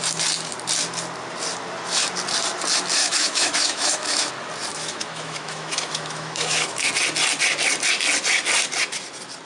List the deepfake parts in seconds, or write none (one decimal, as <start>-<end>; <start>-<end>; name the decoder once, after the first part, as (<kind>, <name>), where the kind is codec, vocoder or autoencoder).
3.0-4.3 (autoencoder, DAC-VAE); 4.7-6.9